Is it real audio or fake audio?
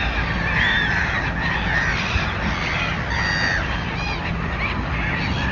real